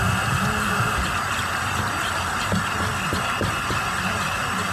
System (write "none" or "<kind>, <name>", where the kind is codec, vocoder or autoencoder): none